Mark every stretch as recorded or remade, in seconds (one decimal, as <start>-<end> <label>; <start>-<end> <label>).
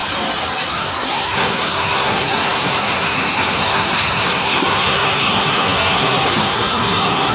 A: 0.0-0.7 recorded; 0.7-7.3 remade